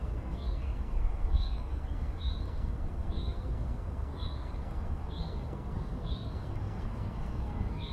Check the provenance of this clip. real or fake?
fake